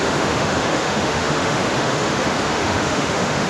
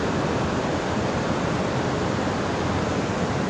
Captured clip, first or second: second